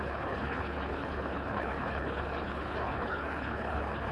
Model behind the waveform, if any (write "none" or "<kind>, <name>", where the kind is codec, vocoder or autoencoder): codec, HILCodec